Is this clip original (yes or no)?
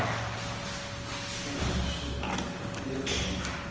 yes